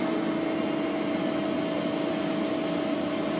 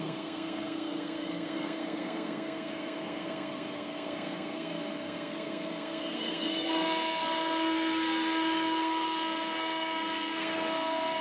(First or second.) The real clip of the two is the first